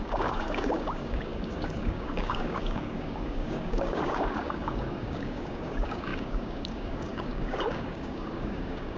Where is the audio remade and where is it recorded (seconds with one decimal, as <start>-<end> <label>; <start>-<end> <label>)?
0.0-9.0 remade